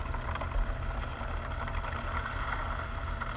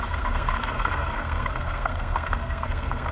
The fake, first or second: second